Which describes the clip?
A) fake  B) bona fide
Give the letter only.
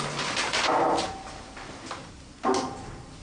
B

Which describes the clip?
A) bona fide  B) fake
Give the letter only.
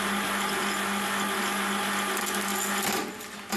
A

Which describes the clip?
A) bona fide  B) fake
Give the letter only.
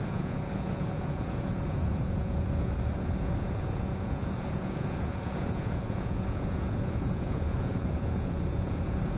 B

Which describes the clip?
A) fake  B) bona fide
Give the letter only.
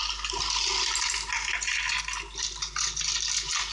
B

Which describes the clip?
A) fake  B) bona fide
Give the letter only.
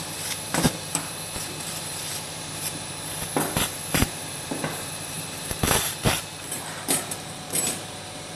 A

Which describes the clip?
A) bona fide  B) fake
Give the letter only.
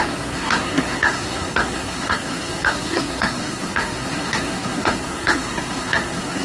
B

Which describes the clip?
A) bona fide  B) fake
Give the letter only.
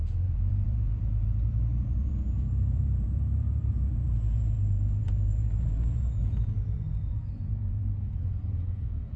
B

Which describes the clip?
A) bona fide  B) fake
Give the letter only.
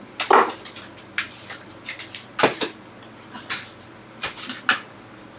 A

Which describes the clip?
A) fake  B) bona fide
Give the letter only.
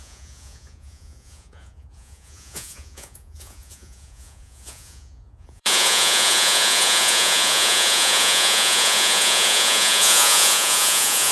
A